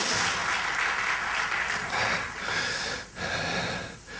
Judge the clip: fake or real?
real